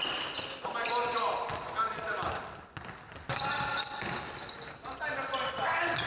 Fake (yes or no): no